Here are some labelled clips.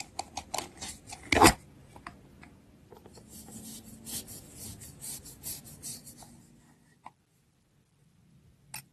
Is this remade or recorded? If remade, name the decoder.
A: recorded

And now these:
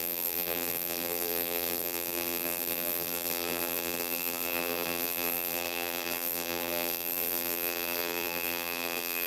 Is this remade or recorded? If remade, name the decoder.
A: remade, vocoder, BigVGAN v2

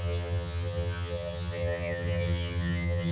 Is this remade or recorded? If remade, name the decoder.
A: remade, vocoder, HiFi-GAN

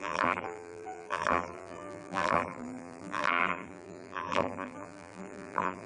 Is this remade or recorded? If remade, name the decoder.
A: remade, vocoder, BigVGAN v2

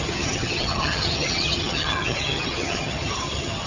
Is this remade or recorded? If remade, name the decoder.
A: remade, vocoder, HiFi-GAN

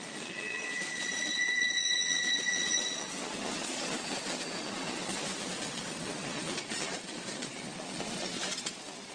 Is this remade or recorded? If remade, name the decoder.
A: remade, vocoder, Vocos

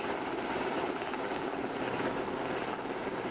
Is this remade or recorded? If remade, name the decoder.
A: recorded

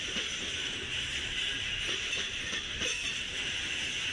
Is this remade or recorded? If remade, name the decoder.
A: remade, vocoder, BigVGAN v2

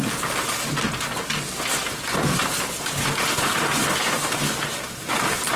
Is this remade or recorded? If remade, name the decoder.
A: recorded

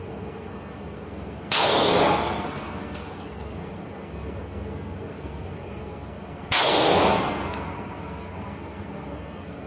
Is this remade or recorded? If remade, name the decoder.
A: remade, codec, SNAC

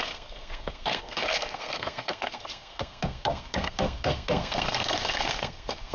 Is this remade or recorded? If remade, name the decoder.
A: remade, codec, SNAC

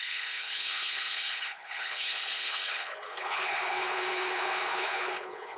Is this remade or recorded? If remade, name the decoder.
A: remade, codec, HILCodec